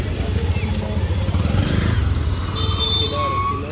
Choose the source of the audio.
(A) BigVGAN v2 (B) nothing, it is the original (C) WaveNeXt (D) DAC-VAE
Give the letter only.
B